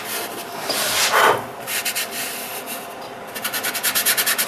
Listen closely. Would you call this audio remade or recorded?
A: recorded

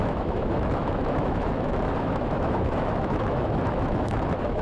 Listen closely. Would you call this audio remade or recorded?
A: remade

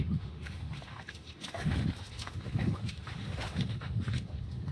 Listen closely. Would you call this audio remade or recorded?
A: remade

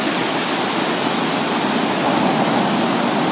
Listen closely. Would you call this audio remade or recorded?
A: recorded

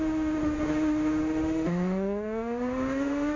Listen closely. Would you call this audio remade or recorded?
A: remade